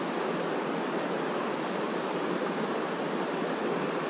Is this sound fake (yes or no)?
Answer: no